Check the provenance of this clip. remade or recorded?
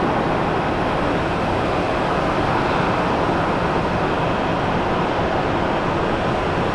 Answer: recorded